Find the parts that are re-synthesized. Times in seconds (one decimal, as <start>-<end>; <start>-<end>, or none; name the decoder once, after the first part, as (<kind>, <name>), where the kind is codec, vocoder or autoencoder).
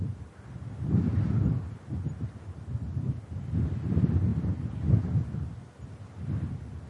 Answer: none